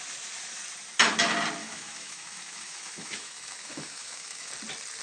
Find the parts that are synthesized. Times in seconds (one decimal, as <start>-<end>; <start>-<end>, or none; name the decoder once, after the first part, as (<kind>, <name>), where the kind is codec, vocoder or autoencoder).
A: 1.6-4.5 (autoencoder, DAC-VAE)